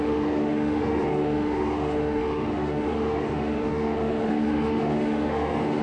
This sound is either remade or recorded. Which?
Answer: remade